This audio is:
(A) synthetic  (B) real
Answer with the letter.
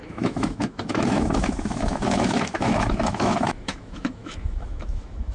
A